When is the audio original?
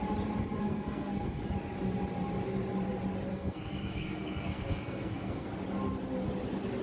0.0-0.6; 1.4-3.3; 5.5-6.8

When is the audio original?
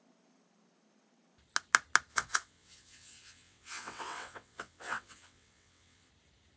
0.0-2.1; 6.1-6.6